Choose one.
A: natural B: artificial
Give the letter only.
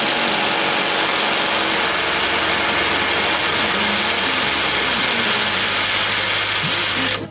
A